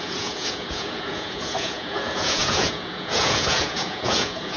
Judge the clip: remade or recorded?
remade